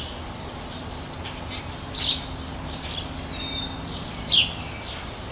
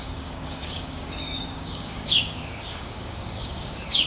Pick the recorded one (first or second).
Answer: first